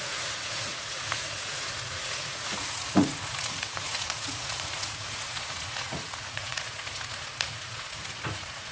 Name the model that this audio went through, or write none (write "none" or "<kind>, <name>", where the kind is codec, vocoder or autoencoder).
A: vocoder, Vocos